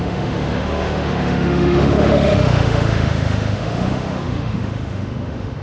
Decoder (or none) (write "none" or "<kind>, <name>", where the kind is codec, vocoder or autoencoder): autoencoder, DAC-VAE